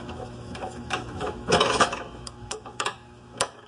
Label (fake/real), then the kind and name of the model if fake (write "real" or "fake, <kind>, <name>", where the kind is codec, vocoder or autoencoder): fake, autoencoder, DAC-VAE